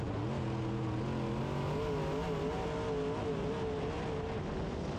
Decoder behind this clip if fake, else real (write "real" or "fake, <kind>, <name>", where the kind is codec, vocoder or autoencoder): real